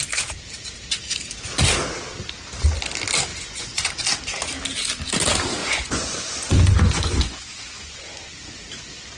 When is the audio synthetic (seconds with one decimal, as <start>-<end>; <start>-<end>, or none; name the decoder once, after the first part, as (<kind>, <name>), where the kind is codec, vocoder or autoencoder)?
3.3-3.9 (vocoder, Vocos); 5.6-8.3